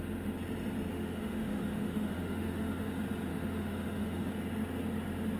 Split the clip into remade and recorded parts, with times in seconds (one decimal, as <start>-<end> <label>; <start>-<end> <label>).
0.0-0.9 recorded; 0.9-2.9 remade; 2.9-3.3 recorded; 3.3-4.3 remade; 4.3-5.4 recorded

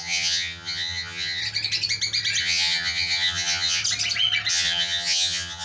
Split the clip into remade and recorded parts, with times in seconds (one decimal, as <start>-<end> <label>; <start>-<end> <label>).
0.0-1.4 remade; 1.4-2.4 recorded; 2.4-3.8 remade; 3.8-4.5 recorded; 4.5-5.6 remade

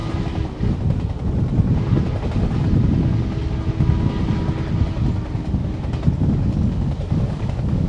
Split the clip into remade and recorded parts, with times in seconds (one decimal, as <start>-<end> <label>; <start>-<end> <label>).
0.0-6.2 recorded; 6.2-7.9 remade

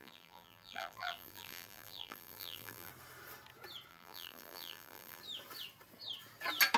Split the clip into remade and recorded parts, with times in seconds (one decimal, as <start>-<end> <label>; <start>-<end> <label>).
0.0-2.9 remade; 2.9-3.9 recorded; 3.9-5.2 remade; 5.2-6.8 recorded

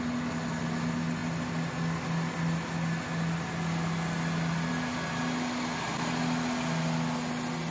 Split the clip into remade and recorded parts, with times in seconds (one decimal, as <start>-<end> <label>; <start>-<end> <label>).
0.0-7.7 recorded

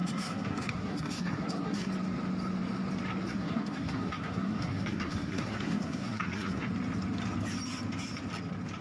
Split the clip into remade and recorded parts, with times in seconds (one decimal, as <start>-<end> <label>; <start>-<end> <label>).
0.0-1.9 remade; 1.9-3.3 recorded; 3.3-6.7 remade; 6.7-8.8 recorded